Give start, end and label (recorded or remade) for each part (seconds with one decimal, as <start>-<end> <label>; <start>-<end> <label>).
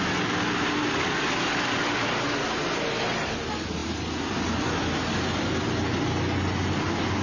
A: 0.0-7.2 recorded